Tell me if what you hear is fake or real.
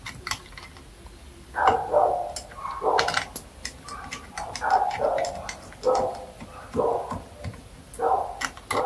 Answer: real